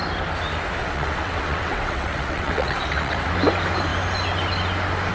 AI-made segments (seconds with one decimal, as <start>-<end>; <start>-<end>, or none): 0.8-3.3